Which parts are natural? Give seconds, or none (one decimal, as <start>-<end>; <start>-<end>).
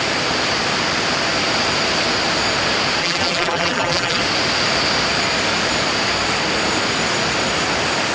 0.0-3.0; 4.2-8.1